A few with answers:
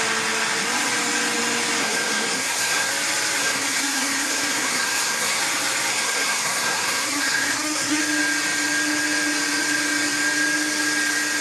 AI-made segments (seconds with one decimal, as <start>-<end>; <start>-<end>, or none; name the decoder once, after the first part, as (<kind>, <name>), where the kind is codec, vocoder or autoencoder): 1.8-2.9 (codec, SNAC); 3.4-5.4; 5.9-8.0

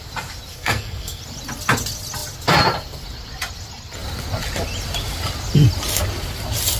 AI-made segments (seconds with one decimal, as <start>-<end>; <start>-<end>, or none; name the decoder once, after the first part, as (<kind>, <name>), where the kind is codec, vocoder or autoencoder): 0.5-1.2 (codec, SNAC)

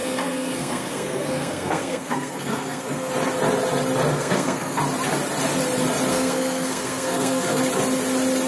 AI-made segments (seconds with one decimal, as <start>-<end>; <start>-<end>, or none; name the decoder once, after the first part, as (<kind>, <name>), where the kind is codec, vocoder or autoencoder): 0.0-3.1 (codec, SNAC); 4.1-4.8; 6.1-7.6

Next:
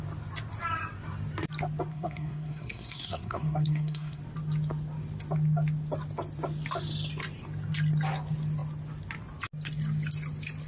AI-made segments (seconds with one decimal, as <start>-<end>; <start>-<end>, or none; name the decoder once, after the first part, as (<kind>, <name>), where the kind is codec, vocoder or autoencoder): 1.9-4.2 (codec, SNAC)

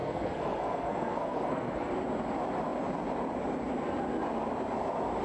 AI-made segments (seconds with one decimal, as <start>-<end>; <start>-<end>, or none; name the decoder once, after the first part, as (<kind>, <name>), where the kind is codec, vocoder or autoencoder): 0.0-1.9 (codec, SNAC)

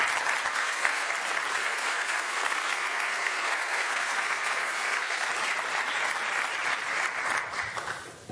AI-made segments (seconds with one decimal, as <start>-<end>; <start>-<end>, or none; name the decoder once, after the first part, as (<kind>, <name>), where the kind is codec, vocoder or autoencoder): 0.5-1.1 (codec, SNAC); 1.6-5.3

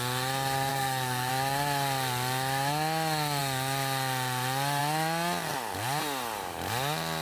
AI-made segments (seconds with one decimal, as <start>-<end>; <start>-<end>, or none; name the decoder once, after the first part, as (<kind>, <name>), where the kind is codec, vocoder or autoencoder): 0.7-1.3 (codec, SNAC)